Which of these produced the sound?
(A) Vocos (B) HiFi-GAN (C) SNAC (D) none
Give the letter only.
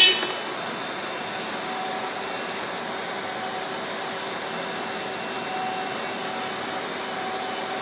D